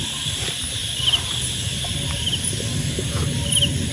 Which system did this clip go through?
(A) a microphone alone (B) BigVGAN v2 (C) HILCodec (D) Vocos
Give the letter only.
A